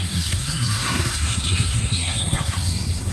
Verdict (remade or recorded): remade